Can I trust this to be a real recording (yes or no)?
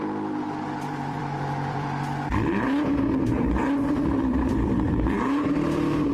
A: no